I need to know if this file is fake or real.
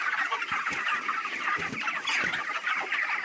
real